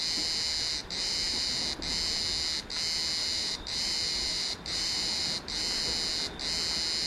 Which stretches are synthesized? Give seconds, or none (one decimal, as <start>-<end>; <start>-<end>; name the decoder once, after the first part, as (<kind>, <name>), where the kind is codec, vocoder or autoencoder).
0.8-1.6 (vocoder, BigVGAN v2); 3.2-5.8

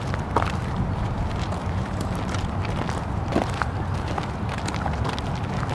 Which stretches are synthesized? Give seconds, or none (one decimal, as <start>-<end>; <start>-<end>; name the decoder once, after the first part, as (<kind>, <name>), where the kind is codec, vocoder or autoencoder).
1.6-2.1 (vocoder, BigVGAN v2)

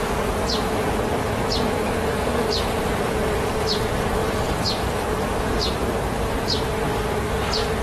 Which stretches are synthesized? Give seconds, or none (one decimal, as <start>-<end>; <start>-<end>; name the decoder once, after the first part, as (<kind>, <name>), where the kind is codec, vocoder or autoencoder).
4.2-4.8 (vocoder, BigVGAN v2)

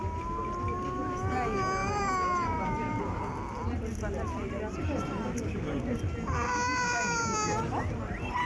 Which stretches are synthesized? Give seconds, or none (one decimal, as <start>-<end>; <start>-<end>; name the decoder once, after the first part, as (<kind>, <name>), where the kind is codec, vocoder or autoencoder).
1.8-3.2 (vocoder, BigVGAN v2)

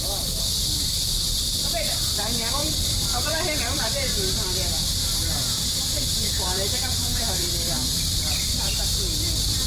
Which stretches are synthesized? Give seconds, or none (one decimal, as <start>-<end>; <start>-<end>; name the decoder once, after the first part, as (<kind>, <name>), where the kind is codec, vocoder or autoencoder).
0.0-4.8 (vocoder, BigVGAN v2); 5.9-9.7